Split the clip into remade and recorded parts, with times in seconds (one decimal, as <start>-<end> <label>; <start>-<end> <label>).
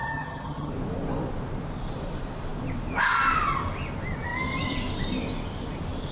0.0-0.7 remade; 0.7-6.1 recorded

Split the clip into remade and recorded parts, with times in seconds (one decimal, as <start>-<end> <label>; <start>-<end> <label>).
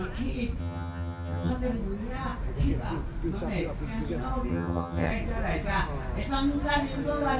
0.0-0.6 recorded; 0.6-1.5 remade; 1.5-4.5 recorded; 4.5-5.1 remade; 5.1-7.4 recorded